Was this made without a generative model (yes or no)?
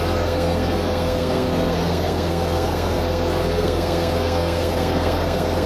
no